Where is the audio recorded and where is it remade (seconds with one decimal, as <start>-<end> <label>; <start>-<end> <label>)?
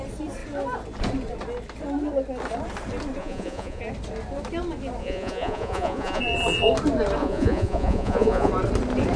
0.0-3.2 recorded; 3.2-3.8 remade; 3.8-5.0 recorded; 5.0-6.2 remade; 6.2-7.2 recorded; 7.2-8.5 remade; 8.5-9.2 recorded